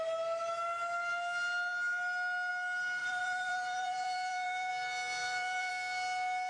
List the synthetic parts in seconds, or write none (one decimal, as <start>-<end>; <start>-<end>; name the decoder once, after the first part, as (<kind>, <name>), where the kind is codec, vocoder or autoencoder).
3.0-4.7 (vocoder, BigVGAN v2); 5.2-5.7